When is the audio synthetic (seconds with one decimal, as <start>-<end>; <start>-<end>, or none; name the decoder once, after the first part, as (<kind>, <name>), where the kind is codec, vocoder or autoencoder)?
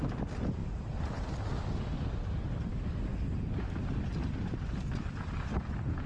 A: 0.6-2.1 (vocoder, BigVGAN v2); 3.1-6.1